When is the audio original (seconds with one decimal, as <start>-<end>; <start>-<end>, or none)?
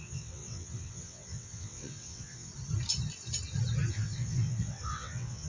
2.5-3.9